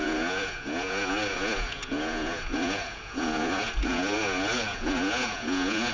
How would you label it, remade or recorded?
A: remade